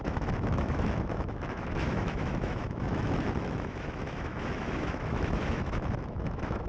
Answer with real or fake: fake